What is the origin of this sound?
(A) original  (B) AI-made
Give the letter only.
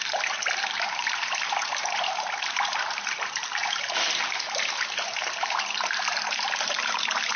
B